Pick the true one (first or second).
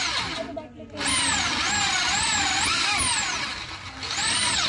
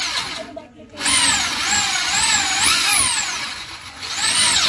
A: first